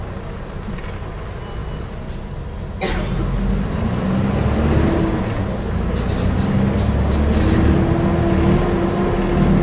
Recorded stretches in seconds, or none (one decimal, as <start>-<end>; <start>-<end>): 0.0-9.6